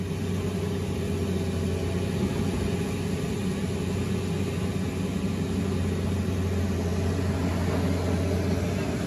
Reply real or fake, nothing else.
real